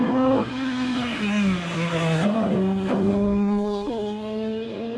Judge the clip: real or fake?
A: fake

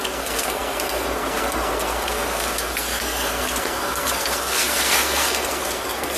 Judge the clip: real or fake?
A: fake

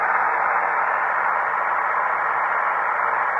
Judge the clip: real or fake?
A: real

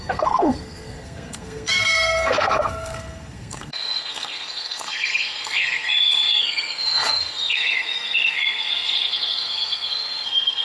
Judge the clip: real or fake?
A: fake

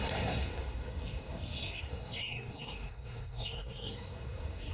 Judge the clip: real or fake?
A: fake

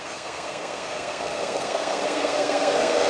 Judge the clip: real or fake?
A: fake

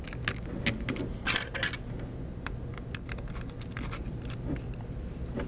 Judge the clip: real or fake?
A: real